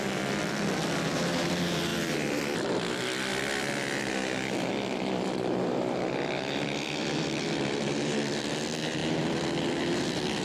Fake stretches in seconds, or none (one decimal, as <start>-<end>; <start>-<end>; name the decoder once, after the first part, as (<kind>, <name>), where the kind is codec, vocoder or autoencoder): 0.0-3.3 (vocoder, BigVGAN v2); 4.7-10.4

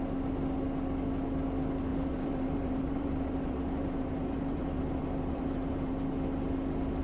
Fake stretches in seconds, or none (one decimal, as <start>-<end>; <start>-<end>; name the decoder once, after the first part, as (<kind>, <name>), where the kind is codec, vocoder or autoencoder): 1.9-5.9 (vocoder, BigVGAN v2)

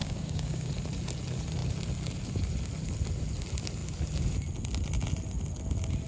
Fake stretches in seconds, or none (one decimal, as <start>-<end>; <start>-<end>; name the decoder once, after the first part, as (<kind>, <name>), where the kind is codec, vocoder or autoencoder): 0.0-0.7 (codec, DAC)